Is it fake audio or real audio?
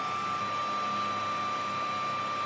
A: real